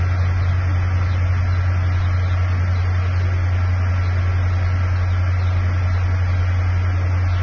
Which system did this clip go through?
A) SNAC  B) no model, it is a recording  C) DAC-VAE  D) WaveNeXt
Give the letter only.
B